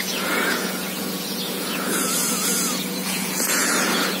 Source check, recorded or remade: remade